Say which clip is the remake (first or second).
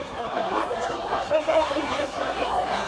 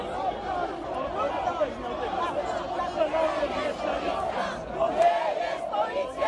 first